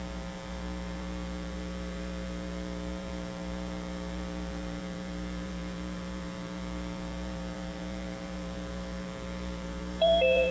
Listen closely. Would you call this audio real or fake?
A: fake